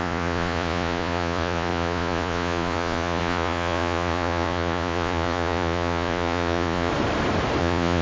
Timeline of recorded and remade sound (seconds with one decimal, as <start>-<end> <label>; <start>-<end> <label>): 0.0-6.9 remade; 6.9-7.6 recorded; 7.6-8.0 remade